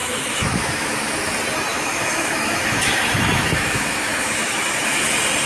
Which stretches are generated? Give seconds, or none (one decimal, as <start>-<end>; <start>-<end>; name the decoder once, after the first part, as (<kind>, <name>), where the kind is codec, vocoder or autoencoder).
0.0-1.2 (autoencoder, DAC-VAE); 1.7-5.0